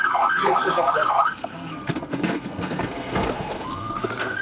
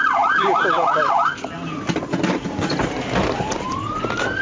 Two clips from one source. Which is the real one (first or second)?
second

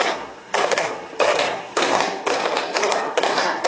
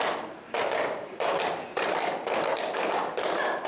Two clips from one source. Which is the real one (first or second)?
second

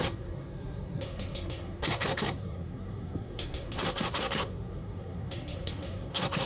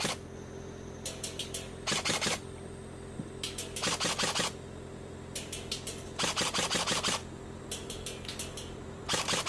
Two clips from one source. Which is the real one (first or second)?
second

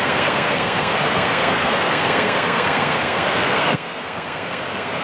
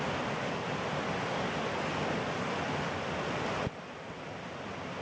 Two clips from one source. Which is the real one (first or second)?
second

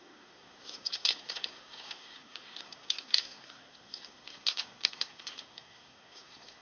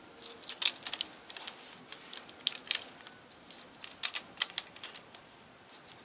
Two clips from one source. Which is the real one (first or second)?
second